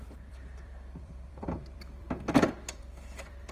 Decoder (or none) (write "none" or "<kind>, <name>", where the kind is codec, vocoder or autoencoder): vocoder, BigVGAN v2